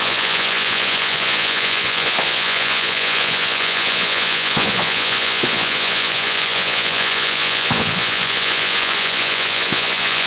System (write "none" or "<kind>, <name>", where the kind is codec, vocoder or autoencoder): vocoder, Vocos